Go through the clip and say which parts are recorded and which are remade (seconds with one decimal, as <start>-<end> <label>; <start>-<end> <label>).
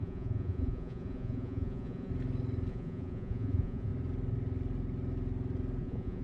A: 0.0-2.1 remade; 2.1-2.7 recorded; 2.7-3.9 remade; 3.9-5.8 recorded; 5.8-6.2 remade